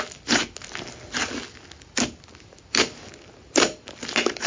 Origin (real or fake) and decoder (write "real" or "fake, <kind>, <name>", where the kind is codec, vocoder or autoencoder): real